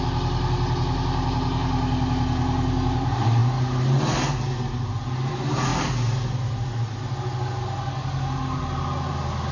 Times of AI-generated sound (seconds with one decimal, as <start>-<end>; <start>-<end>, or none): none